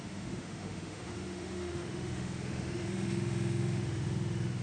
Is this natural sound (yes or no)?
no